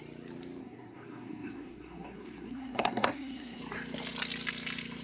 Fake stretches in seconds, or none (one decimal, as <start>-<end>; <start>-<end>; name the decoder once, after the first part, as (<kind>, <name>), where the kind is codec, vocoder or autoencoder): 0.6-3.6 (codec, SNAC)